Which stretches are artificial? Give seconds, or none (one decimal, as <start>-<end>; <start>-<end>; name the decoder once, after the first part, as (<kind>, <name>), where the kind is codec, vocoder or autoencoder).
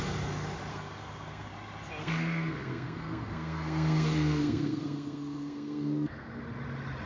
0.7-1.5 (codec, SNAC); 2.0-6.3